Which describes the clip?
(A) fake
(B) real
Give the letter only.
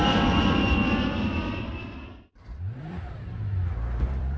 A